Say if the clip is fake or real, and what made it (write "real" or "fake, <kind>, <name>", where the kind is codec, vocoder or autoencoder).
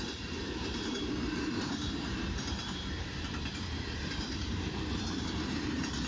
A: fake, vocoder, BigVGAN v2